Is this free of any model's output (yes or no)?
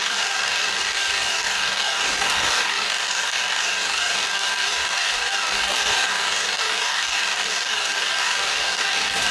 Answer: no